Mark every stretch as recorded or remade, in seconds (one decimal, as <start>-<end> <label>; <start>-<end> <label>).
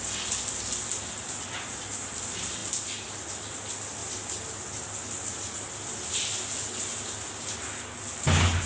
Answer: 0.0-8.7 recorded